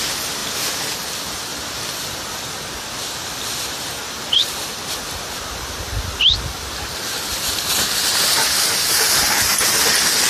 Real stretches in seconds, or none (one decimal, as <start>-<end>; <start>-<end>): 0.0-10.3

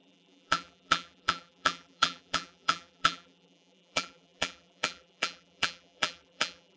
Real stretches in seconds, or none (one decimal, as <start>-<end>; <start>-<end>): none

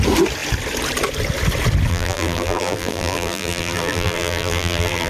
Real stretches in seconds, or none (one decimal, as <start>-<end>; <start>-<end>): 0.0-1.9

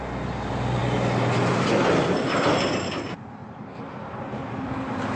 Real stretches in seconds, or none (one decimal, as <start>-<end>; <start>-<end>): 0.0-5.2

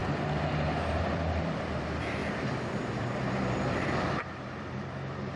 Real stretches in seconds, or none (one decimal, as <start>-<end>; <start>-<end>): 0.0-1.0; 2.2-3.0

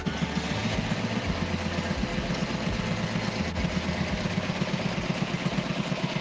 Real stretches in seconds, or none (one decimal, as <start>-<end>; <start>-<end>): 0.0-0.6; 1.5-6.2

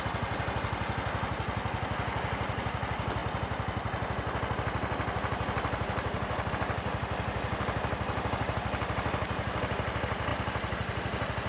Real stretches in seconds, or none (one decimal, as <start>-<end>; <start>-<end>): 0.0-11.5

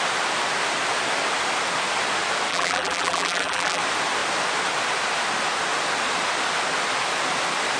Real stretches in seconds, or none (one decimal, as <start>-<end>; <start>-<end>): 0.0-2.5; 3.8-7.8